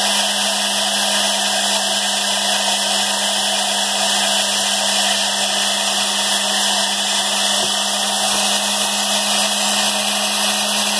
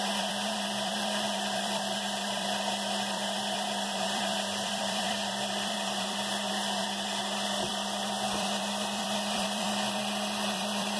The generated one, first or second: second